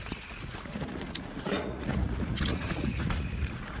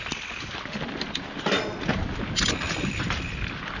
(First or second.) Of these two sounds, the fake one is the first